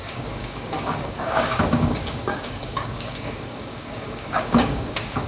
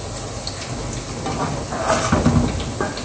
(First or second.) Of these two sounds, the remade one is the first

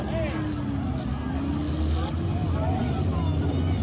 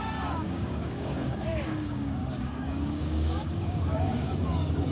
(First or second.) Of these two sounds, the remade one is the second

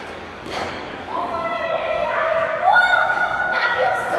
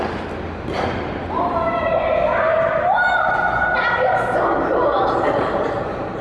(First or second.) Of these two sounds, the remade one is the first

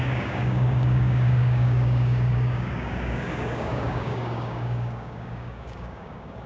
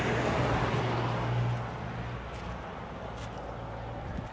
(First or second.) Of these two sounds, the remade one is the first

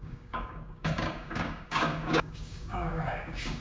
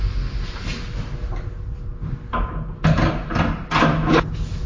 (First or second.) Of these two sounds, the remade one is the first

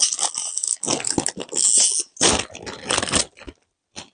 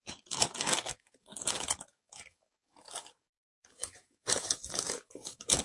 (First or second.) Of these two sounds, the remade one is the second